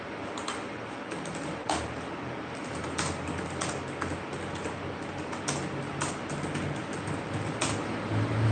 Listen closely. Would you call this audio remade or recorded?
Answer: recorded